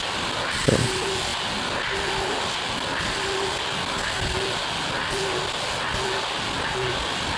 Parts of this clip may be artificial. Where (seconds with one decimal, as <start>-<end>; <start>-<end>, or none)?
none